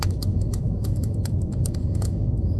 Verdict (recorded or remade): remade